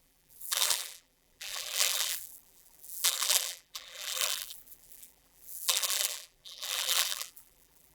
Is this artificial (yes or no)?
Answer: yes